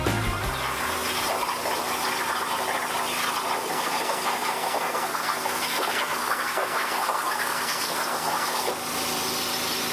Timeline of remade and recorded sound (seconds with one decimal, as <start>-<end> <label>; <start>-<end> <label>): 0.0-3.6 recorded; 3.6-8.7 remade; 8.7-9.9 recorded